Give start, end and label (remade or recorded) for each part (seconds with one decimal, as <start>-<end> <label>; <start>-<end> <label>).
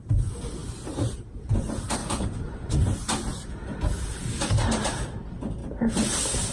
0.0-2.0 recorded; 2.0-2.7 remade; 2.7-6.5 recorded